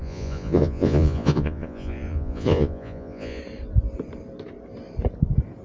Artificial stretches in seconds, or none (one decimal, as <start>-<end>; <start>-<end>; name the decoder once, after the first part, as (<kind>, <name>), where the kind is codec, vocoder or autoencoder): 0.0-3.4 (vocoder, Vocos)